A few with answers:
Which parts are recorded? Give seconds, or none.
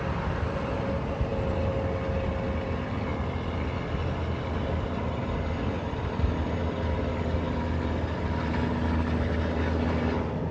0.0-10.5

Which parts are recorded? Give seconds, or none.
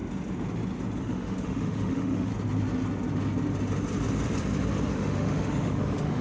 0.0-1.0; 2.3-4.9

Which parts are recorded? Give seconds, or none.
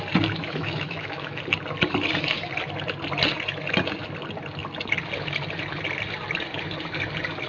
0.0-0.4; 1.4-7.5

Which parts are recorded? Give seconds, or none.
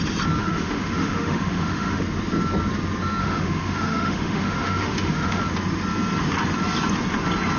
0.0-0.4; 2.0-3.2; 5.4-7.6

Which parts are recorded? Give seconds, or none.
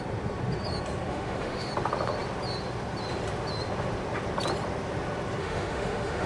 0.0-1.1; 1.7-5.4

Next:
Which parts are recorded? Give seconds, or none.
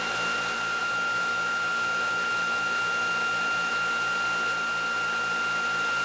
0.0-0.8; 3.7-6.0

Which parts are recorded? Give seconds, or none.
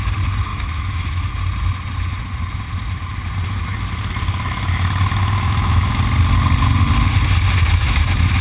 0.0-0.5; 1.3-5.2; 6.0-7.6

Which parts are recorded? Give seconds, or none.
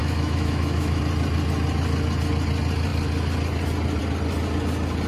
1.0-5.1